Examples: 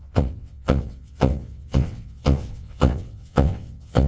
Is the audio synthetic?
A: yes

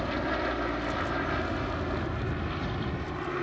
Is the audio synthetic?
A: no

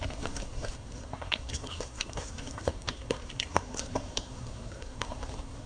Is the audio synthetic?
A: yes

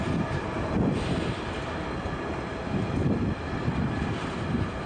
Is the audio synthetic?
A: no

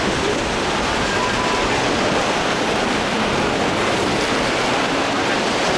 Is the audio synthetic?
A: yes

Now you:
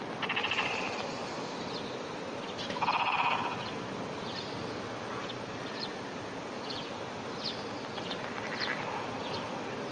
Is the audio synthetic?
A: no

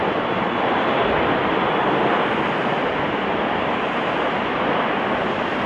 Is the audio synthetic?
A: no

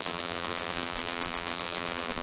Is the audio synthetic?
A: yes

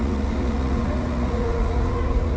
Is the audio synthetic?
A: yes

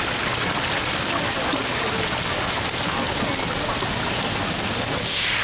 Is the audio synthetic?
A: no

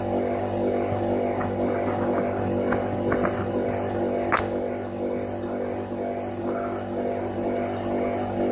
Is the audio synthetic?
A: no